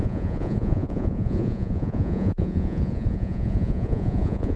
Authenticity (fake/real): fake